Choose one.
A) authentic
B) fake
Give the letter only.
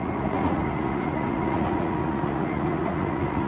B